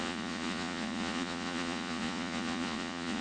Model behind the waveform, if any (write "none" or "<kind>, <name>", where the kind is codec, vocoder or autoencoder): vocoder, Vocos